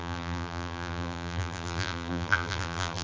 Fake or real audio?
fake